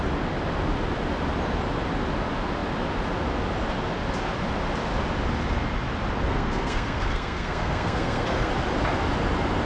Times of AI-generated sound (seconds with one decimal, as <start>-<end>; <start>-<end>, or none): 6.3-8.5